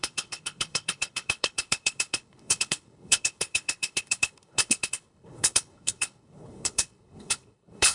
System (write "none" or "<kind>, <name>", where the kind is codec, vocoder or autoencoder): codec, HILCodec